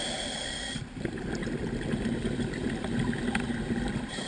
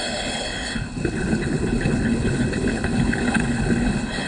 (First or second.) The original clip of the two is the first